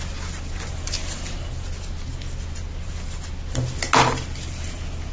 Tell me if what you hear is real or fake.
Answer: real